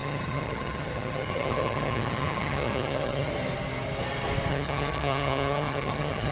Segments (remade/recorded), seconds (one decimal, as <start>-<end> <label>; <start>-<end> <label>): 0.0-3.3 remade; 3.3-4.5 recorded; 4.5-6.3 remade